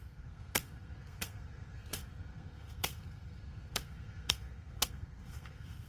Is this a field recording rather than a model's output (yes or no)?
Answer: no